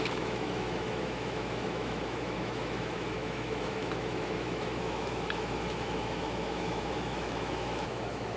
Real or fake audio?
fake